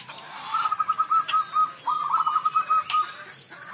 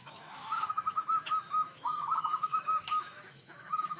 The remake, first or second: second